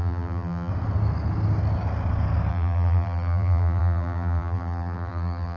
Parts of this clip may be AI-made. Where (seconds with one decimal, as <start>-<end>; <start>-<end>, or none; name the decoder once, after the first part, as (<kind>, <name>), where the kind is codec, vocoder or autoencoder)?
0.0-0.7 (vocoder, BigVGAN v2); 2.5-5.6